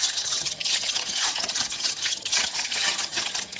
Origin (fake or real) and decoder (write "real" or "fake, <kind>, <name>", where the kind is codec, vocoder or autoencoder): fake, vocoder, HiFi-GAN